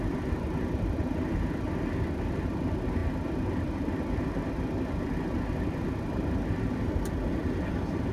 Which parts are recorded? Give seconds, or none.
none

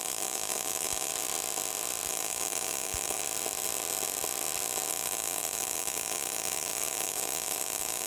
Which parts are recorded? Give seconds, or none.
1.1-2.1; 3.2-4.9